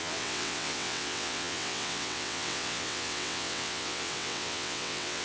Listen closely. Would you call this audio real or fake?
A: fake